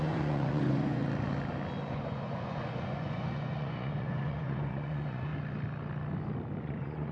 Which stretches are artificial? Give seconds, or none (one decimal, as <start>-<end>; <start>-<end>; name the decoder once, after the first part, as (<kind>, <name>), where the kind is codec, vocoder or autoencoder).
0.0-1.0 (vocoder, Vocos); 1.9-5.3; 6.6-7.1